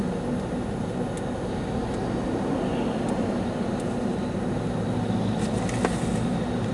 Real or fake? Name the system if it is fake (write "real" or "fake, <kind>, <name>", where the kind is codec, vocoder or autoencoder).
real